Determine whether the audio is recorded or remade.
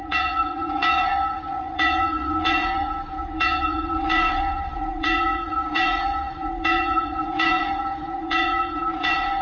remade